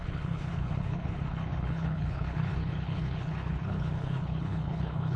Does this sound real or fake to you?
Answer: fake